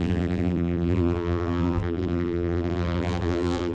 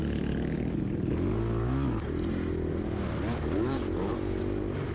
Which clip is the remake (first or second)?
first